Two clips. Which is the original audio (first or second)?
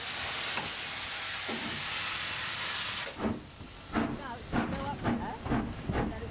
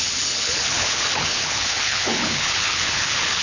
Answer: first